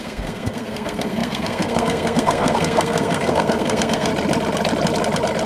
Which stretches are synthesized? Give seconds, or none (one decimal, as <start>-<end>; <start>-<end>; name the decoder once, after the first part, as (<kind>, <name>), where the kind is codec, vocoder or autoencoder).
0.0-4.1 (codec, SNAC)